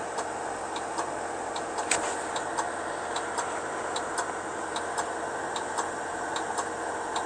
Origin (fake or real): real